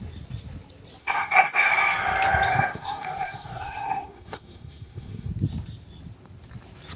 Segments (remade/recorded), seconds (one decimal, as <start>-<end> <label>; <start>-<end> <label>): 0.0-1.0 recorded; 1.0-1.7 remade; 1.7-2.5 recorded; 2.5-5.3 remade; 5.3-7.0 recorded